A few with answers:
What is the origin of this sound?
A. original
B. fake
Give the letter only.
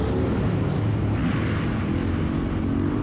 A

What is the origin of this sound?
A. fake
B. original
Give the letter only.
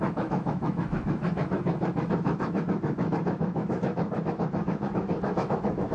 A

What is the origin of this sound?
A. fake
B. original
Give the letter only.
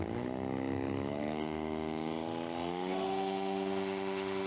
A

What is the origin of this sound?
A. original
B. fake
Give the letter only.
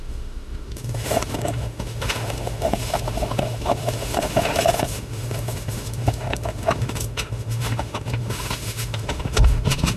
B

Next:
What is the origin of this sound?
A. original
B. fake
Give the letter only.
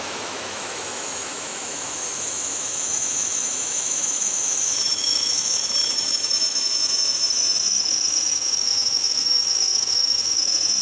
B